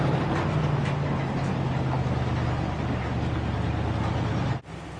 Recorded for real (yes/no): yes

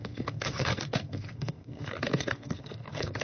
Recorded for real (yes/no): no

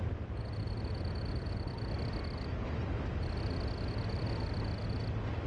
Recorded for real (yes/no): yes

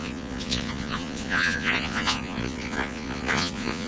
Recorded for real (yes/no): no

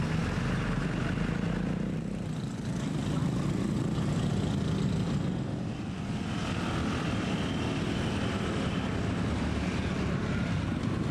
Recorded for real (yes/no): yes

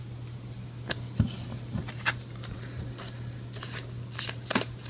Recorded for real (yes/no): yes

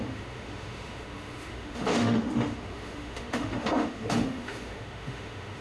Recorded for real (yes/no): no